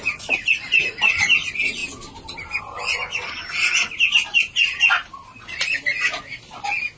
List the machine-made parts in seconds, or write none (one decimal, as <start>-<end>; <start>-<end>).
none